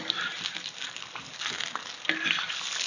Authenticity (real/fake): real